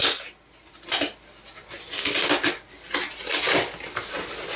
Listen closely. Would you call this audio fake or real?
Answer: real